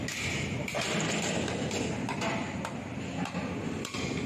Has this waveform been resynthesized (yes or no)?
no